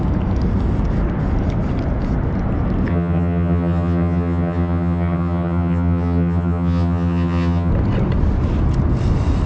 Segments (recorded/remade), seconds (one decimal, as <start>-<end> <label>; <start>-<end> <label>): 0.0-2.9 recorded; 2.9-7.7 remade; 7.7-9.5 recorded